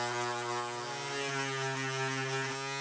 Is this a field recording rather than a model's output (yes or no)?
yes